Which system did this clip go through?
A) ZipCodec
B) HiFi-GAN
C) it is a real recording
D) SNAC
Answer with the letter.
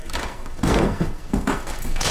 D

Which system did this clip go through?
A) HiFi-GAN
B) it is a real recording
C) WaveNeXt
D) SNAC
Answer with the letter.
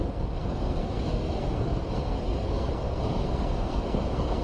D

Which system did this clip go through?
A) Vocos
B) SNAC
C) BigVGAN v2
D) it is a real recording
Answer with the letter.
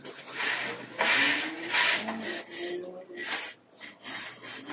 D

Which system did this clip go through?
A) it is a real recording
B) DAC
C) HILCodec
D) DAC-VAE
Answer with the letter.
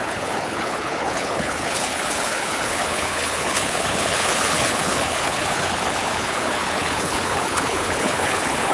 C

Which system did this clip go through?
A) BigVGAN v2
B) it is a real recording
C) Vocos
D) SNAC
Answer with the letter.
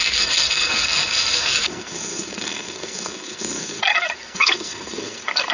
D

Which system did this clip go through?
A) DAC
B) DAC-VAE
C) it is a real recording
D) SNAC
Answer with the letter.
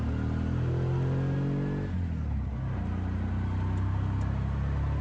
C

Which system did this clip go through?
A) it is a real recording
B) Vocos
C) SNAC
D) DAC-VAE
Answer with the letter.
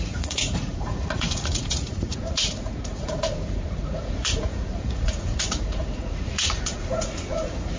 B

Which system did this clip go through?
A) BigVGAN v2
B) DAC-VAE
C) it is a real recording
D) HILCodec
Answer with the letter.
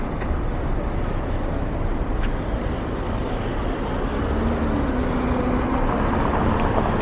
C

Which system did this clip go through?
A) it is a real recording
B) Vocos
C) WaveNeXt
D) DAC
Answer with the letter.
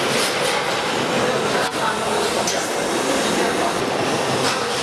A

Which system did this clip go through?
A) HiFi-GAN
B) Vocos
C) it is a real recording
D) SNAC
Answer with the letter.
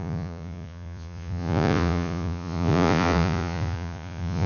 B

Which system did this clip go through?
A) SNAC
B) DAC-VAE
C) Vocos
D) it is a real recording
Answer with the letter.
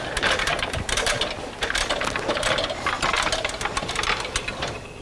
D